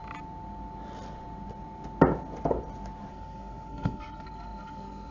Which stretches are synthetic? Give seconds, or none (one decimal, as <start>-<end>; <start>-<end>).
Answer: 3.1-5.1